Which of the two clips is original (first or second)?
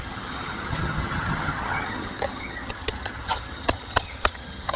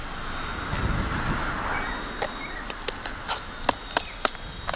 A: second